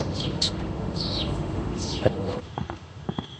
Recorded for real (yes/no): no